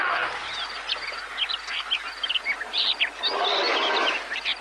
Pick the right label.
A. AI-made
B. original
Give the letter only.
B